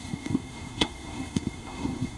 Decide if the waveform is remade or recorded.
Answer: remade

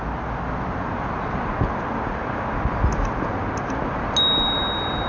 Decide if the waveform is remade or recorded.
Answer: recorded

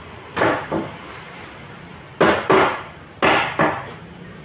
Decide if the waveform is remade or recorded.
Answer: recorded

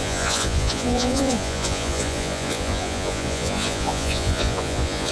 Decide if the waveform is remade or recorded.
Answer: remade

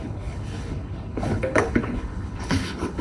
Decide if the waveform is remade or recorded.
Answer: remade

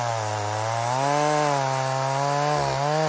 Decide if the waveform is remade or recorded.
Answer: recorded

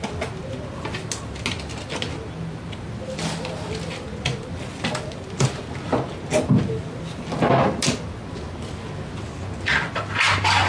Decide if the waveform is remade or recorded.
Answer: recorded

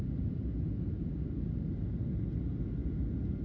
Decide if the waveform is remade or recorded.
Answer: recorded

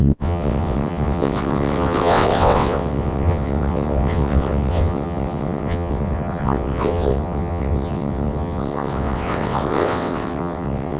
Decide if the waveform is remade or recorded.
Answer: remade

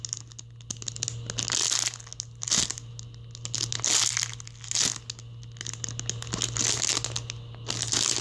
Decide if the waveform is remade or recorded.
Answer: recorded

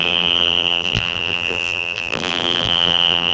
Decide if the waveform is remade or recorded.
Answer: remade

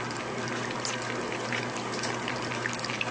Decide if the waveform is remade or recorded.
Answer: recorded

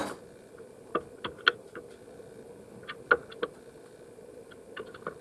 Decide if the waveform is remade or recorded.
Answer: recorded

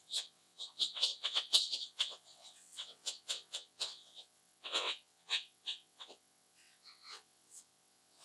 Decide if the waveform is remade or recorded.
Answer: remade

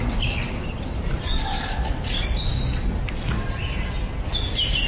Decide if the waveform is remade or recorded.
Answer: recorded